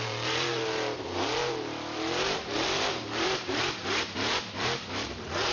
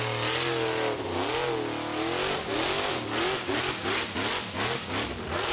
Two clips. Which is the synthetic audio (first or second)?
first